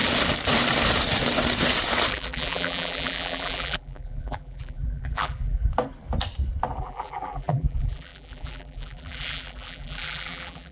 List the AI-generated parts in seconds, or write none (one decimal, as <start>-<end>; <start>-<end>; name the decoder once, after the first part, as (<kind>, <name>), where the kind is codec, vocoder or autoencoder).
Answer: 2.1-5.7 (vocoder, BigVGAN v2); 6.8-10.7